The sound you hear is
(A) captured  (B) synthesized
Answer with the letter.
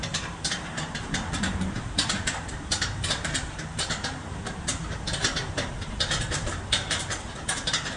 B